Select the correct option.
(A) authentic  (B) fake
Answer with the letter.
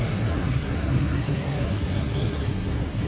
B